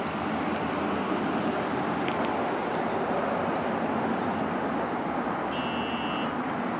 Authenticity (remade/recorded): recorded